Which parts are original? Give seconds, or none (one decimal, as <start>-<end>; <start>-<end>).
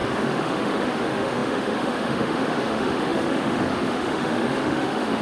none